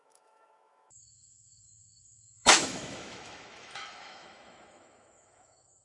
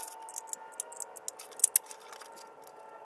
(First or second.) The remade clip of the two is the first